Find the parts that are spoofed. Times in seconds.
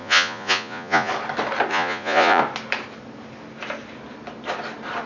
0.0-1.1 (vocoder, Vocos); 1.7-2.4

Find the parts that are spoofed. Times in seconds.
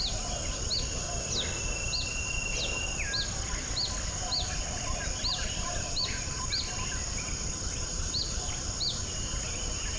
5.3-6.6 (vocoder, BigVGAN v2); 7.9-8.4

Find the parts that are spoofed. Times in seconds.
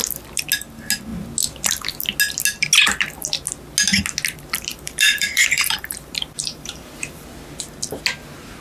4.7-7.2 (vocoder, BigVGAN v2)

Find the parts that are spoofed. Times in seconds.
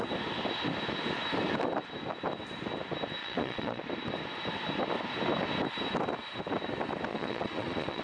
3.2-3.8 (vocoder, Vocos); 7.1-8.0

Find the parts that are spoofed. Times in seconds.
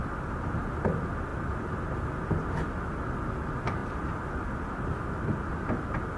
none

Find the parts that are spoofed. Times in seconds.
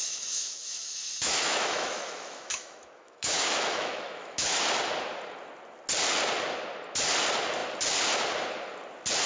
0.0-4.6 (autoencoder, DAC-VAE)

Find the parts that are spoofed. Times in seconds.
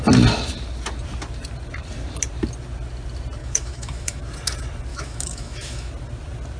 3.4-4.2 (autoencoder, DAC-VAE); 4.9-5.9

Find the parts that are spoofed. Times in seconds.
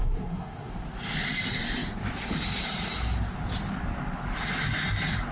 0.0-0.7 (codec, SNAC)